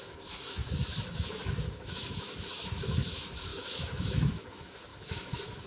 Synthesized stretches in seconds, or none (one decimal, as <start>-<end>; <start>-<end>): 0.0-5.7